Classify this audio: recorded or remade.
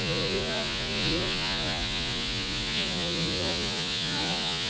remade